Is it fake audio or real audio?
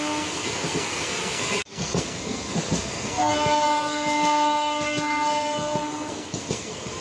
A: fake